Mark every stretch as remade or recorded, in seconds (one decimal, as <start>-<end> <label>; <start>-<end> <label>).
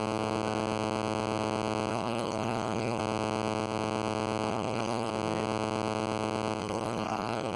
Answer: 0.0-1.9 recorded; 1.9-3.0 remade; 3.0-4.5 recorded; 4.5-5.1 remade; 5.1-6.6 recorded; 6.6-7.6 remade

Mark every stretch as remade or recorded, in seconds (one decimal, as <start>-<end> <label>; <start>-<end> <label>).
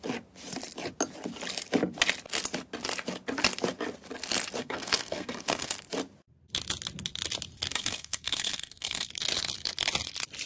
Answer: 0.0-4.6 recorded; 4.6-5.7 remade; 5.7-7.7 recorded; 7.7-9.1 remade; 9.1-10.5 recorded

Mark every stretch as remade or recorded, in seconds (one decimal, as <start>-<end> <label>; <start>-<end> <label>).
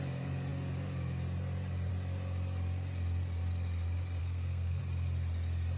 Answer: 0.0-4.2 recorded; 4.2-4.8 remade; 4.8-5.8 recorded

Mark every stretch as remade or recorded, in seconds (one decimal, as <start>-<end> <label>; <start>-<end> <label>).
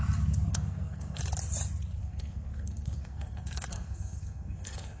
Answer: 0.0-0.5 recorded; 0.5-1.2 remade; 1.2-2.0 recorded; 2.0-5.0 remade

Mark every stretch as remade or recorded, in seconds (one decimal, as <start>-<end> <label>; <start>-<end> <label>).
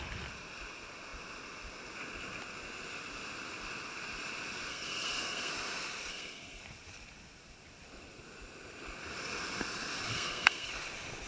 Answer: 0.0-4.7 recorded; 4.7-5.5 remade; 5.5-6.1 recorded; 6.1-6.6 remade; 6.6-10.1 recorded; 10.1-10.7 remade; 10.7-11.3 recorded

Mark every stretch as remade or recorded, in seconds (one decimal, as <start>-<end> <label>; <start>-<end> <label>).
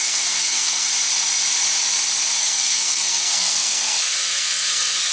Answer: 0.0-0.9 remade; 0.9-2.4 recorded; 2.4-5.1 remade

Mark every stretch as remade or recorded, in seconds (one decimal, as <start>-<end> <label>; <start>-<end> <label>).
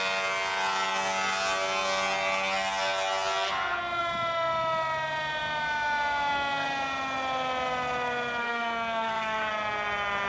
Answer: 0.0-8.4 recorded; 8.4-9.5 remade; 9.5-10.3 recorded